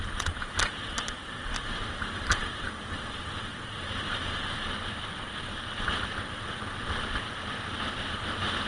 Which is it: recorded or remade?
recorded